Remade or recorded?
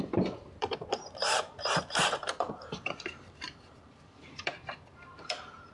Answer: remade